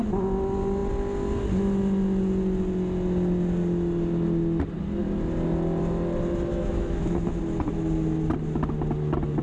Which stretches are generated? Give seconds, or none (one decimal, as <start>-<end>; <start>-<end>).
6.5-7.4